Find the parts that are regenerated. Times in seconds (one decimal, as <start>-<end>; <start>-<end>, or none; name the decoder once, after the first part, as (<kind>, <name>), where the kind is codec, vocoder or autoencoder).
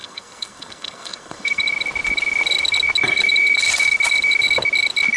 0.0-1.6 (codec, SNAC)